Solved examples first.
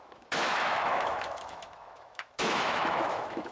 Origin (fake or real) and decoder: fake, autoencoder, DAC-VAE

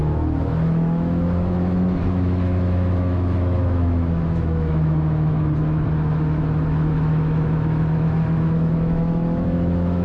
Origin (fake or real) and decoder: fake, autoencoder, DAC-VAE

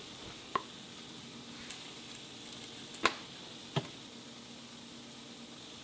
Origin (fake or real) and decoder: real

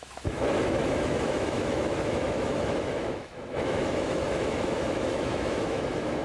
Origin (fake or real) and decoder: fake, autoencoder, DAC-VAE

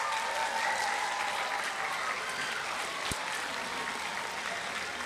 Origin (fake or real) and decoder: real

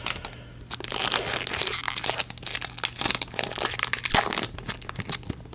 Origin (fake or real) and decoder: real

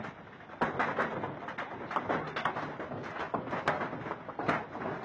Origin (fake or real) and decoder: real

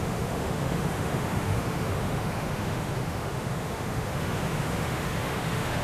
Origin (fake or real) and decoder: fake, autoencoder, DAC-VAE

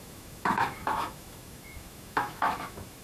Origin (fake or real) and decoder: fake, autoencoder, DAC-VAE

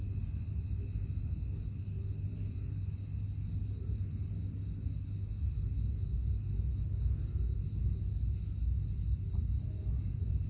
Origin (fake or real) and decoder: real